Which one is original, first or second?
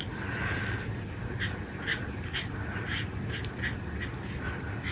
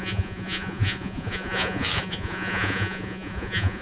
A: first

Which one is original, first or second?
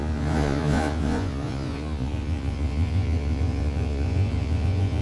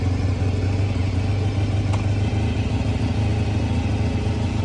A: second